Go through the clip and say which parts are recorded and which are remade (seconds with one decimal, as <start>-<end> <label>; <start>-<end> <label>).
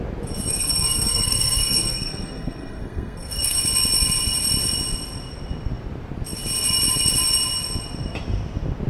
0.0-0.5 recorded; 0.5-3.6 remade; 3.6-8.9 recorded